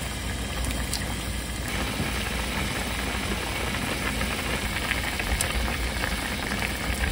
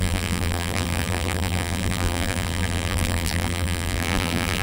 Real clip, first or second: first